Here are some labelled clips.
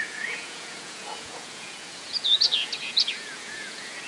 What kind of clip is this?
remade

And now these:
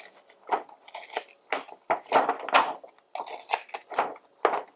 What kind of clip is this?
recorded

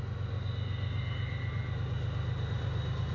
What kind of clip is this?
recorded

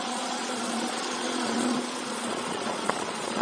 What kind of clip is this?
remade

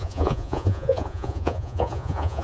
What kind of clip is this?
remade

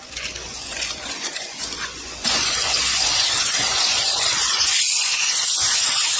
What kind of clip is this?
remade